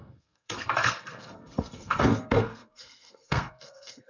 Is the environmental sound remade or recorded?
remade